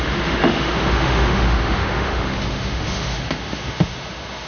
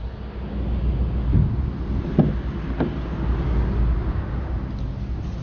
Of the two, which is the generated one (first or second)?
first